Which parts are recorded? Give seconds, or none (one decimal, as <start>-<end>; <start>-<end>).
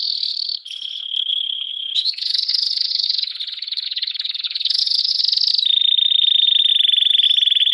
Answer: 5.2-7.7